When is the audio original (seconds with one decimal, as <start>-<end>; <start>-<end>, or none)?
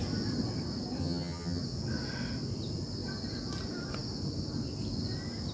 0.0-1.0; 1.6-5.5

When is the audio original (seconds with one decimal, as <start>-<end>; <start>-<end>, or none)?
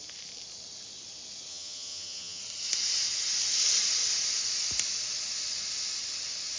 0.0-1.5; 2.4-6.6